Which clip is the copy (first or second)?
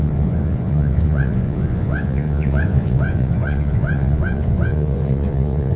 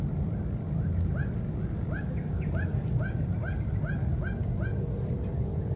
first